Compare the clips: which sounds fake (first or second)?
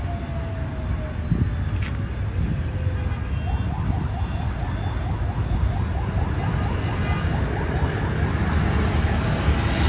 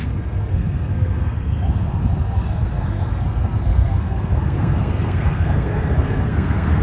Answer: second